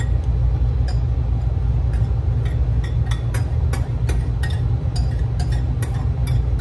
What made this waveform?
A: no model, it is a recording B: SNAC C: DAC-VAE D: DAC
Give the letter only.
A